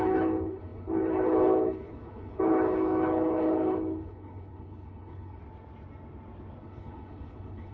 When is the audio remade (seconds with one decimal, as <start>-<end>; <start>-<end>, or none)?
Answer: 0.0-5.4; 6.6-7.7